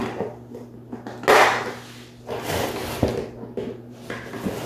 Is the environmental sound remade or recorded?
recorded